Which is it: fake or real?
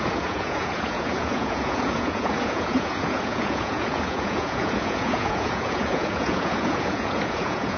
fake